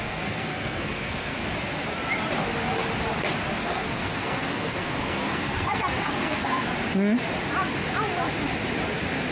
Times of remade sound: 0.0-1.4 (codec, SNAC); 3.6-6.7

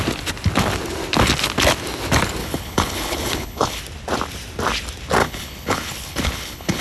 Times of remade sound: 2.4-3.8 (codec, HILCodec); 5.2-6.8

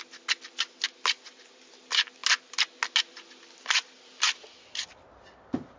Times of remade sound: none

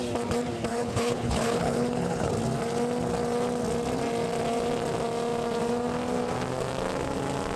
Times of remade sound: 0.7-2.3 (codec, HILCodec)